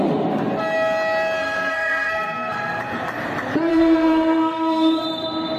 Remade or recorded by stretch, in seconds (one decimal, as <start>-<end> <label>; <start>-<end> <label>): 0.0-1.4 recorded; 1.4-2.8 remade; 2.8-3.7 recorded; 3.7-5.0 remade; 5.0-5.6 recorded